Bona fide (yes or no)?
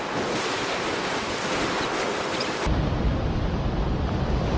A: yes